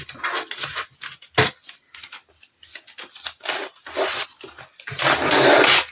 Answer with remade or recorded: recorded